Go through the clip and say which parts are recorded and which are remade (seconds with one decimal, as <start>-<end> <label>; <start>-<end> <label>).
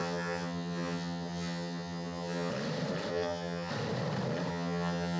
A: 0.0-2.5 remade; 2.5-3.1 recorded; 3.1-3.7 remade; 3.7-4.5 recorded; 4.5-5.2 remade